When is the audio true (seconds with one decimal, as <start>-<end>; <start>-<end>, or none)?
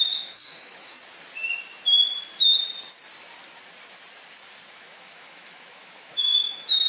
1.0-4.7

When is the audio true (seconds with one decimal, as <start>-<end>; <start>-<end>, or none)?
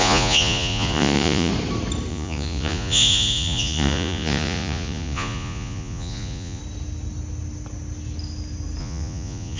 1.5-2.1; 6.6-8.8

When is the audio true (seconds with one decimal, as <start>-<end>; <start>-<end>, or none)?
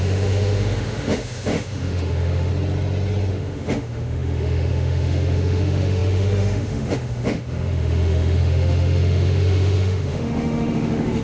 2.5-3.3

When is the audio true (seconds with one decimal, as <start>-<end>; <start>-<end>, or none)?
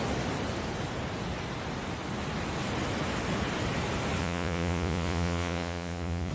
0.0-4.2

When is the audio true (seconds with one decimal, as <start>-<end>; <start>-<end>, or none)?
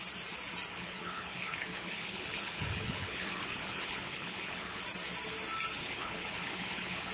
0.0-0.7; 4.8-5.8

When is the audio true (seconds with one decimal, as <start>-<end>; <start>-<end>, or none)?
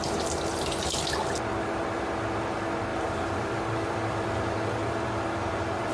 0.0-2.9